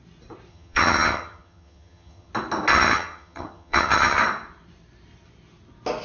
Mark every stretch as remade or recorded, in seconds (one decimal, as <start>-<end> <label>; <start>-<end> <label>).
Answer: 0.0-0.5 recorded; 0.5-2.3 remade; 2.3-2.7 recorded; 2.7-4.2 remade; 4.2-6.0 recorded